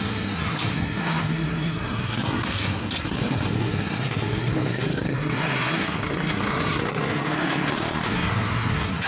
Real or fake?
fake